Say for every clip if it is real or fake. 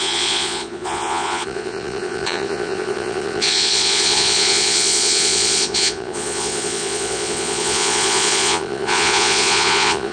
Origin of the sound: fake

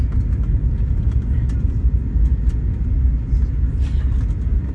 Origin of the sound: real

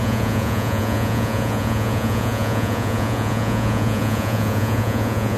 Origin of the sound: fake